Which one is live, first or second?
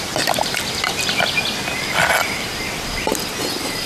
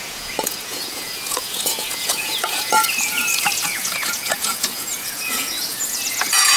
first